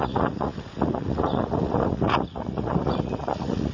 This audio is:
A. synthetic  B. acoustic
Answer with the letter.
A